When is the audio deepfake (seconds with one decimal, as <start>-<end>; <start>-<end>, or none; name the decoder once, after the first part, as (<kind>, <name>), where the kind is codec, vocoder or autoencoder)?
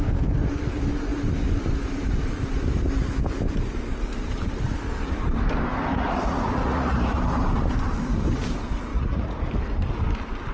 5.9-7.2 (vocoder, Vocos); 8.9-9.5